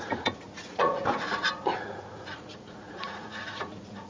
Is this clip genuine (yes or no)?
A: no